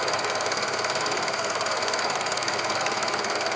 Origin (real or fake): fake